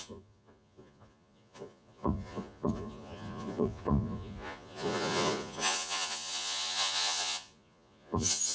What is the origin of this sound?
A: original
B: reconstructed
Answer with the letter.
B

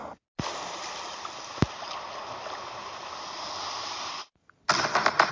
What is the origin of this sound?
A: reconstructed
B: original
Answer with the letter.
B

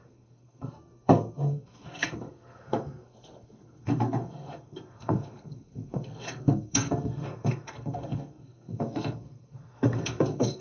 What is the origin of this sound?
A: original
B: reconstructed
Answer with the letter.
B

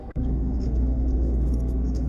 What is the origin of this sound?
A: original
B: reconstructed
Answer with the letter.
B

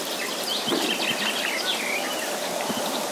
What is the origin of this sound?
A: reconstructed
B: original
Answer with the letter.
B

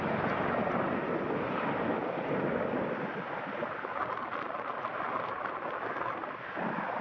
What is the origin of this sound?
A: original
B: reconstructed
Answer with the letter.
A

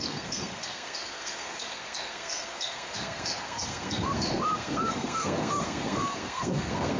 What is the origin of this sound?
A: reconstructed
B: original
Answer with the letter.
A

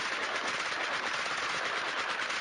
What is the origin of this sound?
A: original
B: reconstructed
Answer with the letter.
A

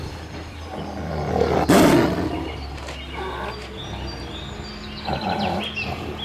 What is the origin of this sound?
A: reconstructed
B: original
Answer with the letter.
B